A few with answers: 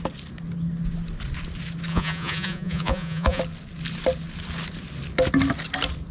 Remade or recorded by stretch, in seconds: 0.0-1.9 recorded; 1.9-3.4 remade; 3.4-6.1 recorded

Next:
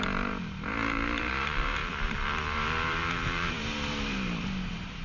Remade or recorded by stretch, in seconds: 0.0-5.0 remade

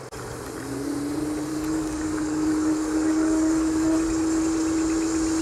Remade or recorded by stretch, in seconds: 0.0-1.5 recorded; 1.5-3.9 remade; 3.9-5.4 recorded

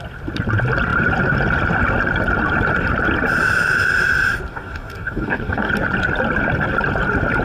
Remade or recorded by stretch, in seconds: 0.0-4.5 recorded; 4.5-5.7 remade; 5.7-7.4 recorded

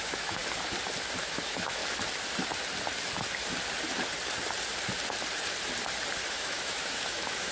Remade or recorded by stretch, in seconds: 0.0-0.4 remade; 0.4-1.2 recorded; 1.2-1.8 remade; 1.8-6.3 recorded; 6.3-7.5 remade

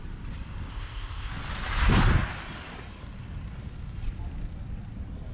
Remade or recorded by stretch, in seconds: 0.0-0.7 recorded; 0.7-1.3 remade; 1.3-5.3 recorded